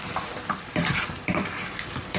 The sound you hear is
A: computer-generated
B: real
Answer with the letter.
B